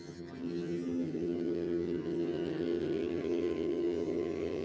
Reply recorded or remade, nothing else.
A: remade